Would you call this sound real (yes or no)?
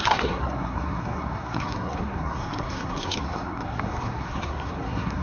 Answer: no